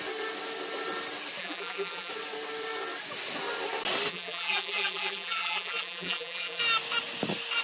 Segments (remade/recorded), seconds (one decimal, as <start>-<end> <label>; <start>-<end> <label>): 0.0-1.4 recorded; 1.4-2.1 remade; 2.1-4.1 recorded; 4.1-6.6 remade; 6.6-7.6 recorded